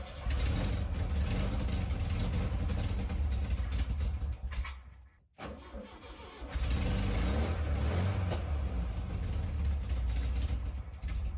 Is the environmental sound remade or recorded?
recorded